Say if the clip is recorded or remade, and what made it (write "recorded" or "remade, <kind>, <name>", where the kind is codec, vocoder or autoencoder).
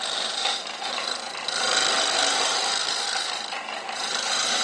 remade, vocoder, BigVGAN v2